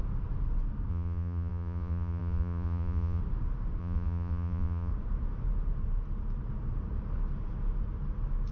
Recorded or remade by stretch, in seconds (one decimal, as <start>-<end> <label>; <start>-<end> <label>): 0.0-0.9 recorded; 0.9-3.2 remade; 3.2-3.8 recorded; 3.8-4.9 remade; 4.9-8.5 recorded